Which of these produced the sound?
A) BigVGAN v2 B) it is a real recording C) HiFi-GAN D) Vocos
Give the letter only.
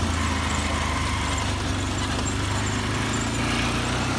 B